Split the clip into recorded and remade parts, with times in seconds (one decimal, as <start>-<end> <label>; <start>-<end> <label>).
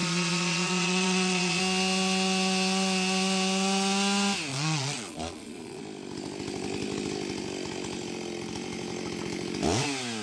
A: 0.0-1.6 remade; 1.6-4.5 recorded; 4.5-5.8 remade; 5.8-10.2 recorded